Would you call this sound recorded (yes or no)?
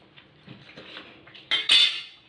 yes